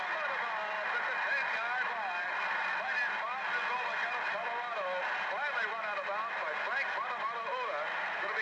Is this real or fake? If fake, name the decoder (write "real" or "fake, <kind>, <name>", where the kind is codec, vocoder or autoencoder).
real